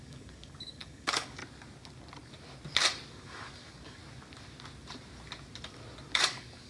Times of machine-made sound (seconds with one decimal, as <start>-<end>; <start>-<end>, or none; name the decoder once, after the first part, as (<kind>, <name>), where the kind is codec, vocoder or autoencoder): 0.0-1.4 (codec, DAC); 3.1-4.0; 6.1-6.7

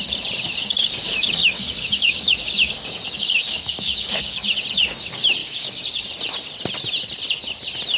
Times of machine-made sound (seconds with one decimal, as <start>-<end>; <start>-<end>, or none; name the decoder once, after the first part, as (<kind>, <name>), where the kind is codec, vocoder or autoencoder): 0.6-4.5 (codec, DAC); 5.4-5.9